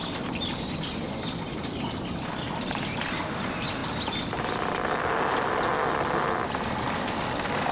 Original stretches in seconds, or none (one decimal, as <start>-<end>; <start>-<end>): 0.0-7.7